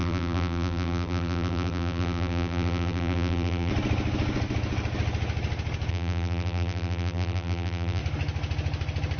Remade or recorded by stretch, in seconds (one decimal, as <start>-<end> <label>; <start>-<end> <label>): 0.0-3.7 remade; 3.7-5.9 recorded; 5.9-8.0 remade; 8.0-9.2 recorded